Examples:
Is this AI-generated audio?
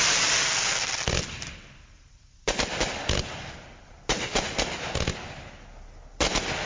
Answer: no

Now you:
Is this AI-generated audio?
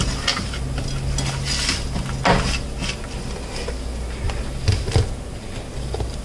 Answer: no